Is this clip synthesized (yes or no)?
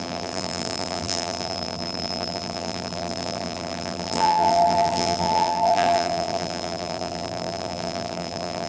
yes